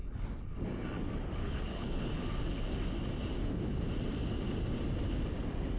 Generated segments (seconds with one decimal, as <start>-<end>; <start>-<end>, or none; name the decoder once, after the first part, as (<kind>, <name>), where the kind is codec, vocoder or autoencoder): 1.4-2.1 (codec, HILCodec)